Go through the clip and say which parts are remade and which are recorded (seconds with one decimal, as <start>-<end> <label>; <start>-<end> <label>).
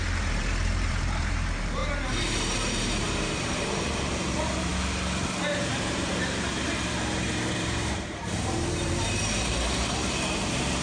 0.0-1.8 remade; 1.8-2.3 recorded; 2.3-4.7 remade; 4.7-5.7 recorded; 5.7-10.8 remade